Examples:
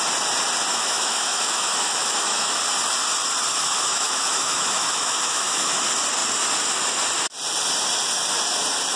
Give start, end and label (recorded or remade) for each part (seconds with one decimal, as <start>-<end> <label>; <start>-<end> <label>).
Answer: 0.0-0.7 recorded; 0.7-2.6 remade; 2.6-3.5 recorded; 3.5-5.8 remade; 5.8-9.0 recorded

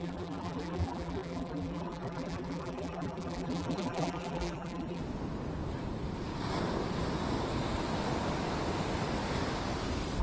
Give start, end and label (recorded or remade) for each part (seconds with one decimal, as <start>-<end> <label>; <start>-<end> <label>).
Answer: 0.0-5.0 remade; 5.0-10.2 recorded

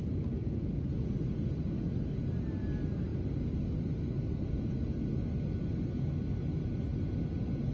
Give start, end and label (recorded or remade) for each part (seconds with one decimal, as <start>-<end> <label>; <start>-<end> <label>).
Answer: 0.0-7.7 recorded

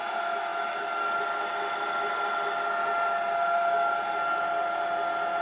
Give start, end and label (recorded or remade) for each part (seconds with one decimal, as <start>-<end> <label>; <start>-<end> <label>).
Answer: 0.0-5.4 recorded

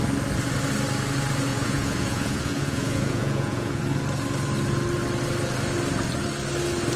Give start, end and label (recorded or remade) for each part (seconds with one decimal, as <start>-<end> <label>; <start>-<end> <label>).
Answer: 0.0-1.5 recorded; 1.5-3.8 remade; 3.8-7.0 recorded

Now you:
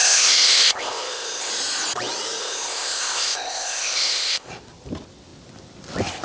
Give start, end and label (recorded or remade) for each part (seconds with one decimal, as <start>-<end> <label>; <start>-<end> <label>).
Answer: 0.0-1.5 remade; 1.5-2.4 recorded; 2.4-4.5 remade; 4.5-6.2 recorded